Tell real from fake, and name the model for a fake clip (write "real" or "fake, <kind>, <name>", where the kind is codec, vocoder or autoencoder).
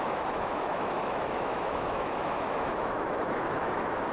fake, autoencoder, DAC-VAE